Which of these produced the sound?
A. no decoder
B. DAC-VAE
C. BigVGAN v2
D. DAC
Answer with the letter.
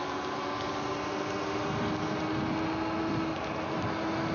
A